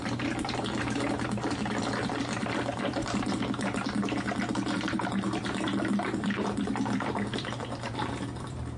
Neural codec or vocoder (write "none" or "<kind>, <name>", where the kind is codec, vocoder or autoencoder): vocoder, BigVGAN v2